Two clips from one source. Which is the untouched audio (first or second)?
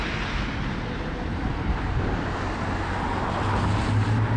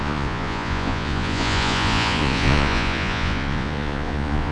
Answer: first